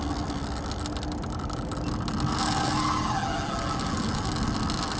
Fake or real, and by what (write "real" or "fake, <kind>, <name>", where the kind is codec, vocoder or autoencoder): real